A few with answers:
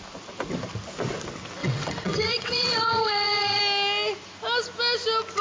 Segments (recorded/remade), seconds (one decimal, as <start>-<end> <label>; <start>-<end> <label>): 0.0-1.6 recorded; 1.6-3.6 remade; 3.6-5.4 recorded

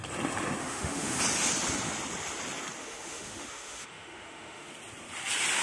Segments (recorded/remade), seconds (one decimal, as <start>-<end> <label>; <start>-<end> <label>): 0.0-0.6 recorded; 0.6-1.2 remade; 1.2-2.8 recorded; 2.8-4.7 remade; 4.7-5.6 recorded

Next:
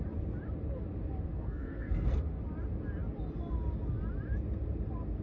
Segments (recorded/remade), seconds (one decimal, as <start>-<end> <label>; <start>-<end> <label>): 0.0-1.3 recorded; 1.3-2.4 remade; 2.4-5.2 recorded

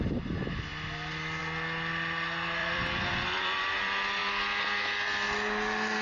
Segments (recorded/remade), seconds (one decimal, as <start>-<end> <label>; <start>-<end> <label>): 0.0-2.6 recorded; 2.6-3.7 remade; 3.7-6.0 recorded

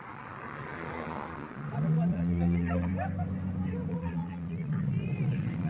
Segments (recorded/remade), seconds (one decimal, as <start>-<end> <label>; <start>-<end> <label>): 0.0-2.9 remade; 2.9-3.9 recorded; 3.9-5.7 remade

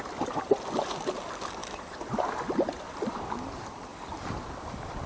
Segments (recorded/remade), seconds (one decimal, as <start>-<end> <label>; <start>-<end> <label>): 0.0-5.1 recorded